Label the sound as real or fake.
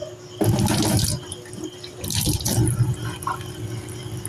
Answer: real